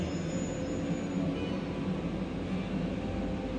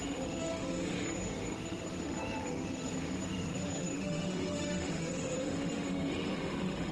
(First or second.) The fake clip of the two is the second